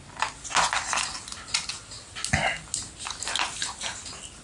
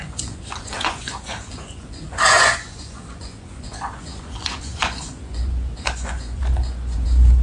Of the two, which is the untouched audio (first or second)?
first